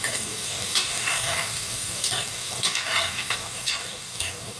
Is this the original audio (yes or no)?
no